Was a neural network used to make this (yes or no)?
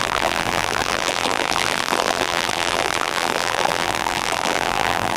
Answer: yes